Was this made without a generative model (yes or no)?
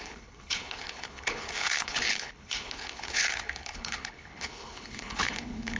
no